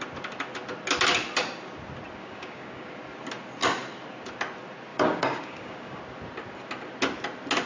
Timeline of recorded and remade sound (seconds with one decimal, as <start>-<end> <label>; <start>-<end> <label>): 0.0-2.2 recorded; 2.2-2.9 remade; 2.9-4.9 recorded; 4.9-6.0 remade; 6.0-7.7 recorded